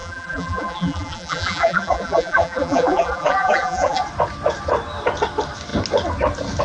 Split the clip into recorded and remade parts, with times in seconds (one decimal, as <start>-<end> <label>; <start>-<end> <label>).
0.0-4.0 remade; 4.0-6.6 recorded

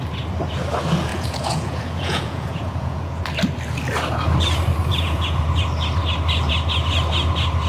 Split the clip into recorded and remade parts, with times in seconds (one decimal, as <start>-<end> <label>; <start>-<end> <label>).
0.0-1.1 recorded; 1.1-3.2 remade; 3.2-4.9 recorded; 4.9-5.4 remade; 5.4-7.7 recorded

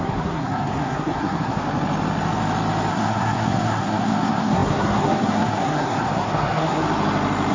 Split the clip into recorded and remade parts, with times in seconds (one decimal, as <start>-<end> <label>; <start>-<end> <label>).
0.0-1.6 remade; 1.6-2.9 recorded; 2.9-6.8 remade; 6.8-7.5 recorded

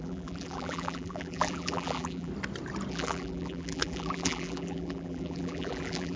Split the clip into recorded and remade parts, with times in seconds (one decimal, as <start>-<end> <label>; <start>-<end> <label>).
0.0-2.3 remade; 2.3-2.9 recorded; 2.9-6.2 remade

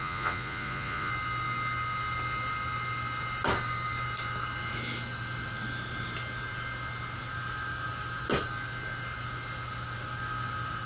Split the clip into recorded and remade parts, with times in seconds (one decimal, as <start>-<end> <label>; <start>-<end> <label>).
0.0-1.1 remade; 1.1-10.9 recorded